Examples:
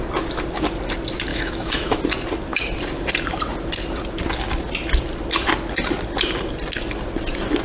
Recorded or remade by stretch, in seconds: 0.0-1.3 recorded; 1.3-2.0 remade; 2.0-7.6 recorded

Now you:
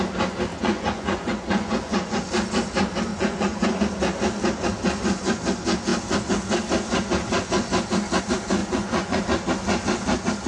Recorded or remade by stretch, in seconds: 0.0-0.5 recorded; 0.5-2.2 remade; 2.2-3.1 recorded; 3.1-3.8 remade; 3.8-8.6 recorded; 8.6-9.2 remade; 9.2-10.5 recorded

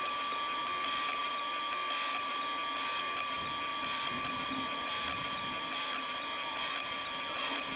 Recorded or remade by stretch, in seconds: 0.0-1.2 recorded; 1.2-2.4 remade; 2.4-3.7 recorded; 3.7-7.2 remade; 7.2-7.8 recorded

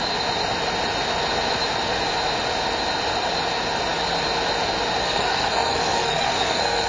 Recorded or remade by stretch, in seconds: 0.0-5.0 recorded; 5.0-6.9 remade

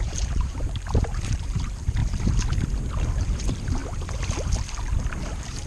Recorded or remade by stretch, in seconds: 0.0-2.0 remade; 2.0-3.2 recorded; 3.2-3.8 remade; 3.8-5.3 recorded; 5.3-5.7 remade